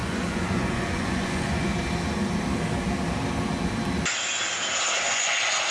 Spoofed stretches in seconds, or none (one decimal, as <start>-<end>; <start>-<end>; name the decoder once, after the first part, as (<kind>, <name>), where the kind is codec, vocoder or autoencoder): 0.0-1.7 (vocoder, Vocos); 5.1-5.7